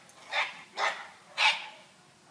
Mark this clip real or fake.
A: real